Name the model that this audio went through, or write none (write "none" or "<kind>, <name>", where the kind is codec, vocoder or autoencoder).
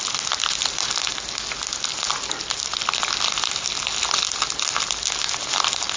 none